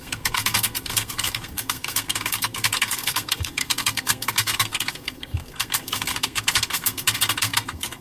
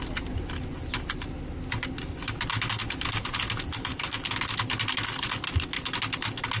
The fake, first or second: first